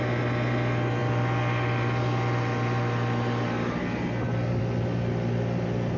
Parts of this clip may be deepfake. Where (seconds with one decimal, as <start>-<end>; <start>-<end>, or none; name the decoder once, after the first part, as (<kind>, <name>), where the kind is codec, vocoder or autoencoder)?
none